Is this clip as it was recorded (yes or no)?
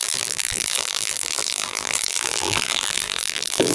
no